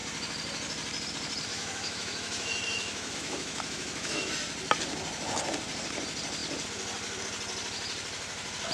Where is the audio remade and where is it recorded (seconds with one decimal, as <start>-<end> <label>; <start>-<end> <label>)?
0.0-1.5 recorded; 1.5-4.3 remade; 4.3-8.7 recorded